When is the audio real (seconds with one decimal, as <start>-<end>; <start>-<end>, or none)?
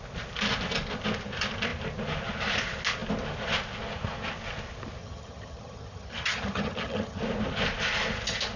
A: 0.0-5.0; 7.2-8.6